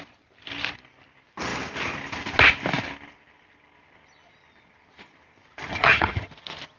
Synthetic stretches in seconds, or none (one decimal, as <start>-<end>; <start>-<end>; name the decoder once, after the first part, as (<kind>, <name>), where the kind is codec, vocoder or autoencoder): 5.7-6.3 (vocoder, HiFi-GAN)